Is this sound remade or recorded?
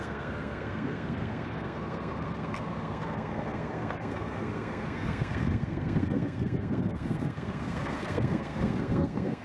remade